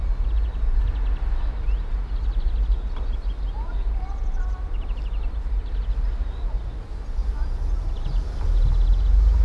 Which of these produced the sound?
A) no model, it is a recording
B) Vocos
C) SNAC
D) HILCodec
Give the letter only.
A